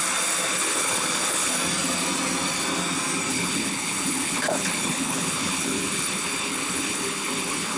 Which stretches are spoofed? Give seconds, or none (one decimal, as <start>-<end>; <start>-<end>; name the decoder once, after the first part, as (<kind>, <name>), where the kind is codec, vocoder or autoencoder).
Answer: 0.5-1.5 (codec, HILCodec); 3.3-7.8